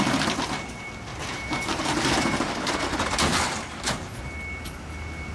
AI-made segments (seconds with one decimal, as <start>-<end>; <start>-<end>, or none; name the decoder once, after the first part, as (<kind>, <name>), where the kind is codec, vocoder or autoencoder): 1.1-4.3 (vocoder, BigVGAN v2)